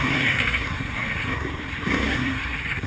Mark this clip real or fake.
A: fake